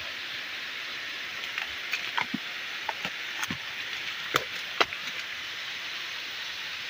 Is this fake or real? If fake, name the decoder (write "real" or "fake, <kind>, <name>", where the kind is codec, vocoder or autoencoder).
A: real